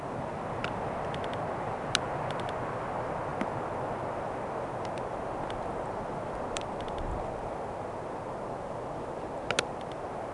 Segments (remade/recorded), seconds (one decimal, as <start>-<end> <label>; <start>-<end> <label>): 0.0-10.3 recorded